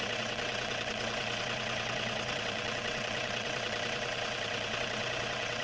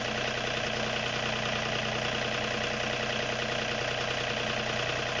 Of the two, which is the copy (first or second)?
first